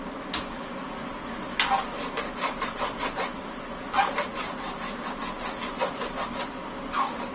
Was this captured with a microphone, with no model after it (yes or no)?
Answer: yes